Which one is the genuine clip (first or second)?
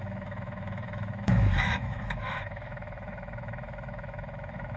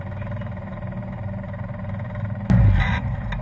second